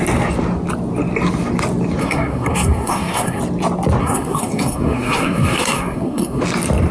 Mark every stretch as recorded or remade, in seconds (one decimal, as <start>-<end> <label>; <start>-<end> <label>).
0.0-2.0 recorded; 2.0-3.4 remade; 3.4-4.0 recorded; 4.0-6.4 remade; 6.4-6.9 recorded